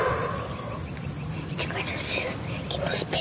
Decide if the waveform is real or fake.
real